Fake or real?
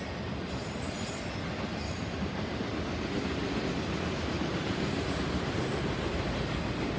real